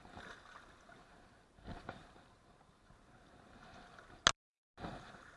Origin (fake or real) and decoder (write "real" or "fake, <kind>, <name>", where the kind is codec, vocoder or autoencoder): real